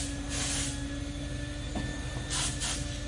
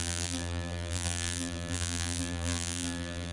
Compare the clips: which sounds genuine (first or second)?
first